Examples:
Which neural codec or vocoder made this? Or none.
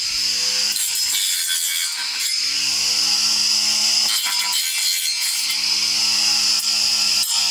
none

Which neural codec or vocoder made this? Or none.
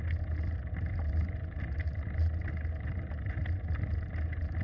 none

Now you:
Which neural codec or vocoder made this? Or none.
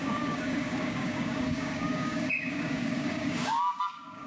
codec, DAC